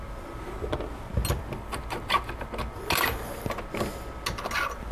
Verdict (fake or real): real